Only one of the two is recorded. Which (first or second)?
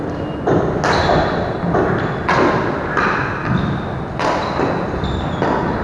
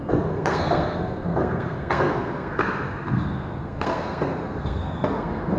first